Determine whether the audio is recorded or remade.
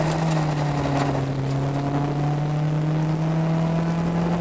recorded